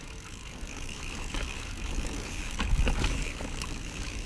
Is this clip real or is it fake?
fake